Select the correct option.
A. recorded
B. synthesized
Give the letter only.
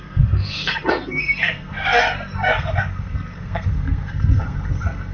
B